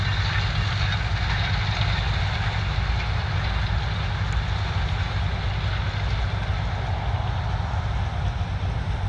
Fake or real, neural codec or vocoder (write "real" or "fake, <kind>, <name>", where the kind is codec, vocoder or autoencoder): real